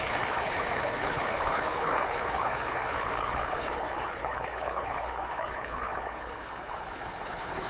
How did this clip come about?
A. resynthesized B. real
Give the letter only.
A